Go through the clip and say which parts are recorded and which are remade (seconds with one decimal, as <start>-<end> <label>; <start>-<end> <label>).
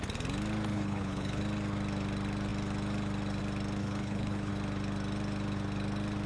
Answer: 0.0-0.7 recorded; 0.7-1.4 remade; 1.4-3.8 recorded; 3.8-4.5 remade; 4.5-6.3 recorded